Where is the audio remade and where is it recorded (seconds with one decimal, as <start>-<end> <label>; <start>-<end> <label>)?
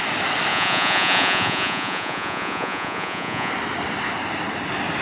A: 0.0-0.5 recorded; 0.5-3.5 remade; 3.5-5.0 recorded